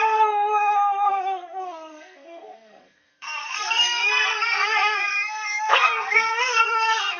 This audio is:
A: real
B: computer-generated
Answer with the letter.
B